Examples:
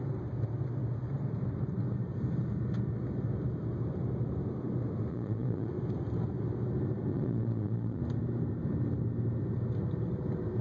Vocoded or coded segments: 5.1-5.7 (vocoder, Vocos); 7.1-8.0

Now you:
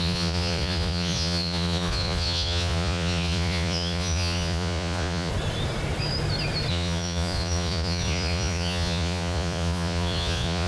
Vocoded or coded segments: 0.0-5.3 (vocoder, Vocos); 6.7-10.7

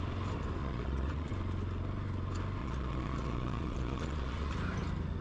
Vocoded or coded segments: 0.6-1.3 (vocoder, Vocos); 2.6-4.5

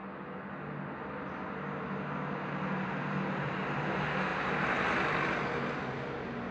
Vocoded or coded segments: none